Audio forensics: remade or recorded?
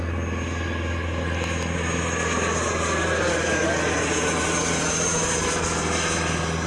recorded